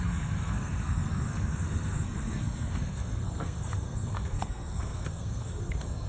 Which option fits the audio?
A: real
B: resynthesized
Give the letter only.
B